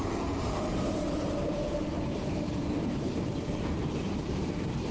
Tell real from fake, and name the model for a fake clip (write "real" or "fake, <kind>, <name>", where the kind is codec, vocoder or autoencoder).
fake, vocoder, BigVGAN v2